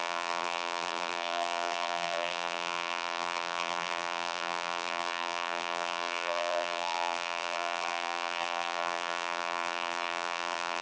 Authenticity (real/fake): fake